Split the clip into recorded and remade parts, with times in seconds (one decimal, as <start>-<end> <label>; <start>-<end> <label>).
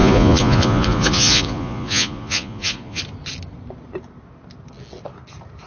0.0-3.0 remade; 3.0-5.7 recorded